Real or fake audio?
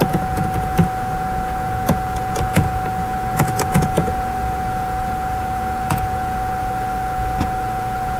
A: fake